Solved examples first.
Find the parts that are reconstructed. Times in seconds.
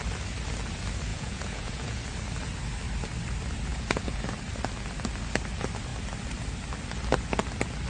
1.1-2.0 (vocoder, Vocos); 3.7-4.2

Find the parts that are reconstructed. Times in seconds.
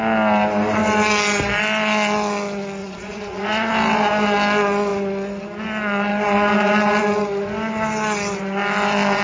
2.8-3.7 (vocoder, Vocos)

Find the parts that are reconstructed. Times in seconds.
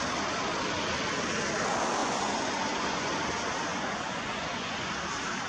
2.0-3.1 (vocoder, Vocos); 3.7-4.9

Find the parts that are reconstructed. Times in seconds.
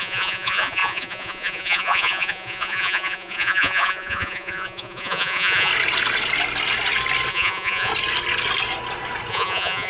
0.0-5.7 (vocoder, Vocos); 7.3-7.9; 9.3-9.9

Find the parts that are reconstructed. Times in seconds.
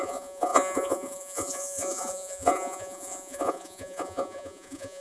0.0-5.0 (vocoder, Vocos)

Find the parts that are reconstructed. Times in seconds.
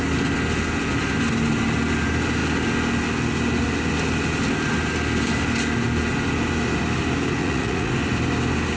7.4-7.9 (vocoder, Vocos)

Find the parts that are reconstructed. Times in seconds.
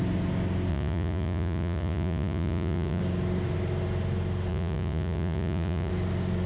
0.7-3.0 (vocoder, Vocos); 4.5-5.9